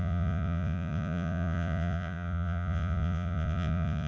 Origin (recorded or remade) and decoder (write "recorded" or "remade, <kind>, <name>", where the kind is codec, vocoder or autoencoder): remade, vocoder, Vocos